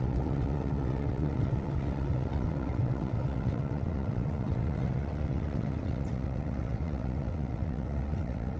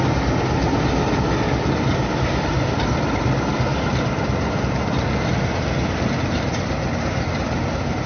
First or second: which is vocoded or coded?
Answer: first